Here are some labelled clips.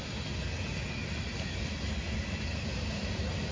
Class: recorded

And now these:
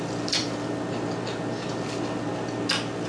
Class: recorded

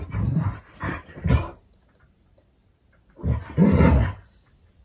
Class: remade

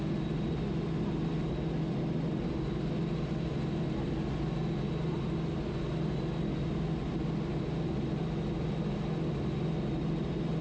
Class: recorded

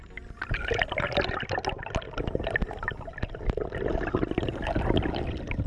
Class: recorded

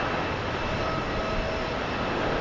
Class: recorded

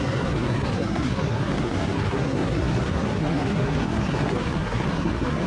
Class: remade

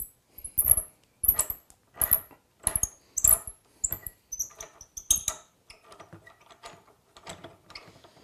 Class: recorded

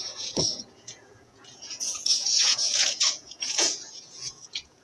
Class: remade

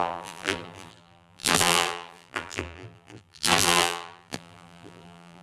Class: remade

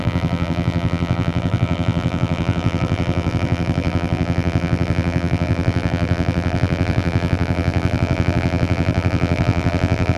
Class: remade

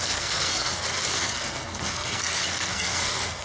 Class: remade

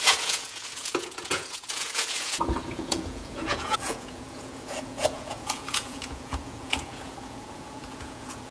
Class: remade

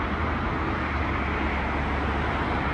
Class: recorded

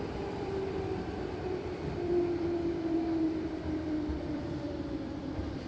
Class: remade